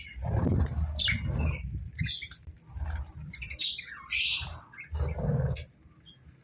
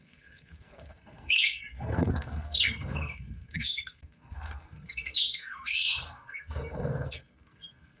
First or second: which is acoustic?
first